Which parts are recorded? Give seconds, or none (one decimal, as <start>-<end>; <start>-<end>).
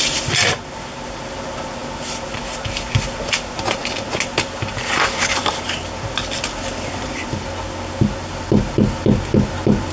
0.0-9.9